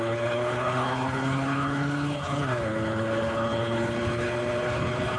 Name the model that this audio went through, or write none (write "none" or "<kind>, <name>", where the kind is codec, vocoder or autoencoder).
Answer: codec, HILCodec